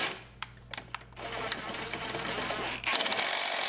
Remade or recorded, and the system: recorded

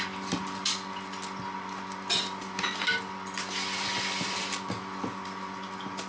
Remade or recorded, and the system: recorded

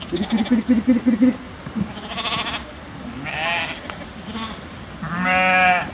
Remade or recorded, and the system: recorded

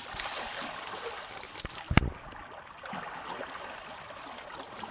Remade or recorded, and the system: recorded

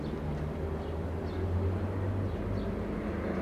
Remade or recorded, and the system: recorded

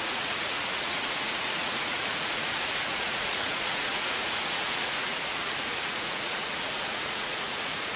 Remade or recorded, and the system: remade, vocoder, Vocos